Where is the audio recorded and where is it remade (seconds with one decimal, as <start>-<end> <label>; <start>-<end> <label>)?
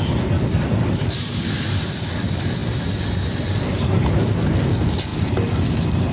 0.0-2.6 remade; 2.6-4.6 recorded; 4.6-6.1 remade